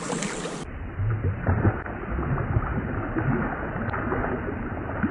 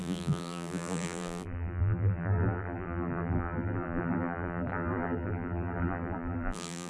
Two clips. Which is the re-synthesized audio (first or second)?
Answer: second